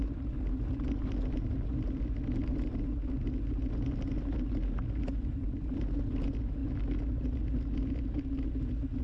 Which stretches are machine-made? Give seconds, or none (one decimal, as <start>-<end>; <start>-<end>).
none